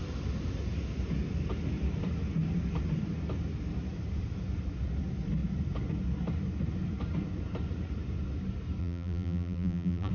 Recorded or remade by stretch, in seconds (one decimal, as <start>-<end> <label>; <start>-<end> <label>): 0.0-8.8 recorded; 8.8-10.1 remade